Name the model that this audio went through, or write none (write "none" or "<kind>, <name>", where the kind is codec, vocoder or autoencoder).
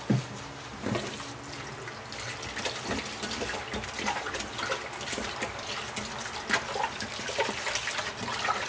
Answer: none